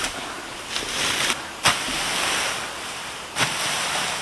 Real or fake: real